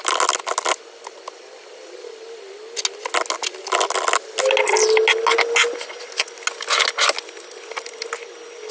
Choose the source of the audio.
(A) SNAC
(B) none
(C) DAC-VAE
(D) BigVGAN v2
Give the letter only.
B